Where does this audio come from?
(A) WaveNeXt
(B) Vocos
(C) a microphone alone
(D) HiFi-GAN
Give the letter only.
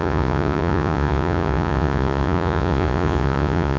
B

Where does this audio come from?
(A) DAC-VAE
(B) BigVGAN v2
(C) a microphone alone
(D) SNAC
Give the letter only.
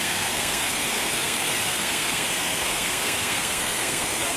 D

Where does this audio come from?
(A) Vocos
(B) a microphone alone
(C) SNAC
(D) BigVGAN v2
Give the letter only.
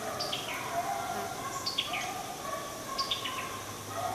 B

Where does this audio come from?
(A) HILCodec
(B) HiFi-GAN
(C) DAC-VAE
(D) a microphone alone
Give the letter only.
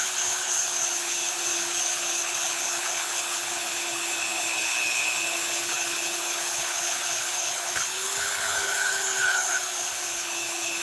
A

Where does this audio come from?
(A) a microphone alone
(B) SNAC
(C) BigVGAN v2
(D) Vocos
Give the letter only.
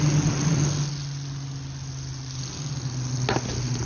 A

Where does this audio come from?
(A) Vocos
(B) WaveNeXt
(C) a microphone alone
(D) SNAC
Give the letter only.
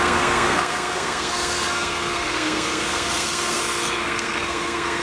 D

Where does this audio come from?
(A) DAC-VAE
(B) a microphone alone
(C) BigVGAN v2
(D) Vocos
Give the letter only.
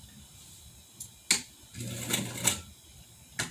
B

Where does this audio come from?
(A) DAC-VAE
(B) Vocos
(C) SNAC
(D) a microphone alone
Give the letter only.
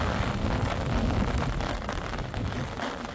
D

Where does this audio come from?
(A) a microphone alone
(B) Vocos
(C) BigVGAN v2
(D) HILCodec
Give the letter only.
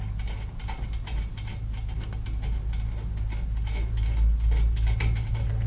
A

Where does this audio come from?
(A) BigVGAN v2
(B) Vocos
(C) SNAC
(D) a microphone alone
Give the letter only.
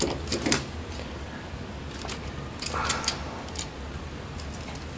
D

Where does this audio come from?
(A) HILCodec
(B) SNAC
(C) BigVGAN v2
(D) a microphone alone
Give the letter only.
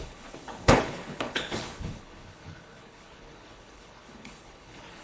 A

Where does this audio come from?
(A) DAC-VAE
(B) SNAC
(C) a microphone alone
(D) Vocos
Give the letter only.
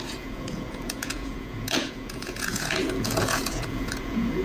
D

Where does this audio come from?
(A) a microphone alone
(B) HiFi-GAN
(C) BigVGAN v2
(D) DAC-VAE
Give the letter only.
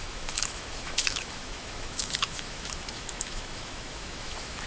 D